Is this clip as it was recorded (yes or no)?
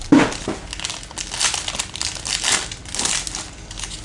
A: yes